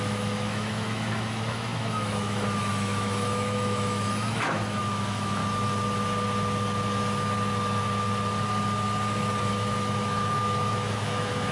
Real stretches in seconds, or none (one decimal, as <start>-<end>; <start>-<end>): 5.4-9.5